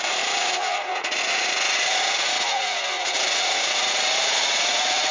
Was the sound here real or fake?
fake